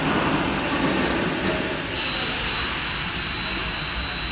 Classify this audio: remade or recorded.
recorded